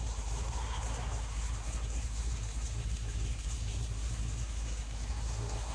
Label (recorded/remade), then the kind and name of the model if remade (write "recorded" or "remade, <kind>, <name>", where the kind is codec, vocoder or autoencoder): remade, codec, SNAC